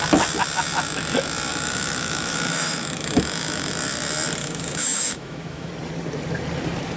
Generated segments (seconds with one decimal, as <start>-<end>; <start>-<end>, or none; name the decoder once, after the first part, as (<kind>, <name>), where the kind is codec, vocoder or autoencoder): 1.5-3.7 (autoencoder, DAC-VAE); 4.4-5.7